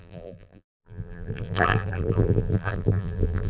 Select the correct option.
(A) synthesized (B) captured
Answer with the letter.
A